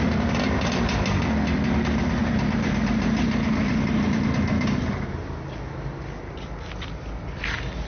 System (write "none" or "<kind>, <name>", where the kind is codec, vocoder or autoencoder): none